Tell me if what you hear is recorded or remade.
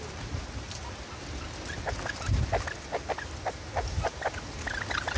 recorded